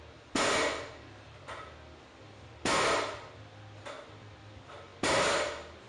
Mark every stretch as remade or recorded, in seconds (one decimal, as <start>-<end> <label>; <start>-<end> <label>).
0.0-5.9 recorded